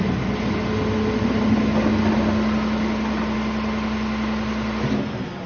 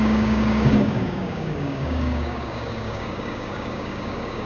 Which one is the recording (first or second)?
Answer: first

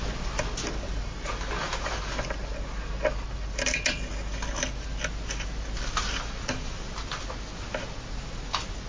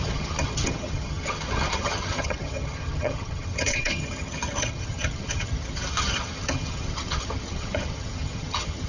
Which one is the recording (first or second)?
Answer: first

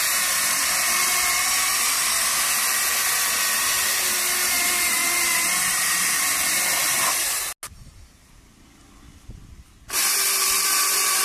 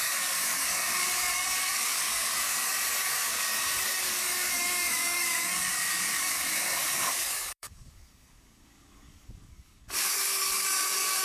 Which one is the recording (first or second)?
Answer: first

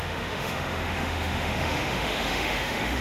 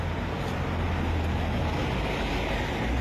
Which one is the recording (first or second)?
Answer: second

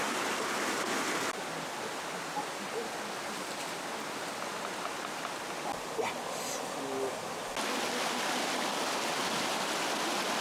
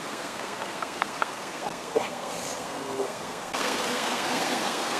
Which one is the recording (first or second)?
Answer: first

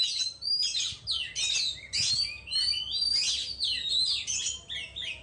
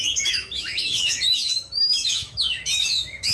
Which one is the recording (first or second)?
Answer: first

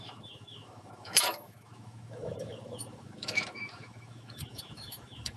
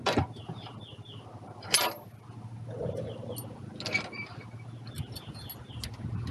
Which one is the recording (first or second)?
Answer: second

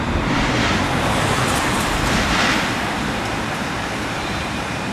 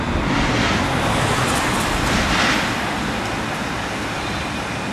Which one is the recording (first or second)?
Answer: second